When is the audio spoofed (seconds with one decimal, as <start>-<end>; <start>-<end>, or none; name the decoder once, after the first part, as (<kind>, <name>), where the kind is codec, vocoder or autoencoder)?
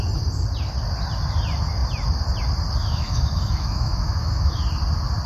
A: 2.8-4.6 (autoencoder, DAC-VAE)